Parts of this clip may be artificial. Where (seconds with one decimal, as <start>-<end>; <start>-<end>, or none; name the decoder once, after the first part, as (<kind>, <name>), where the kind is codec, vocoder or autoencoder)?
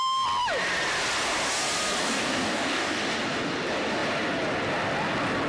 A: 2.0-3.0 (codec, DAC)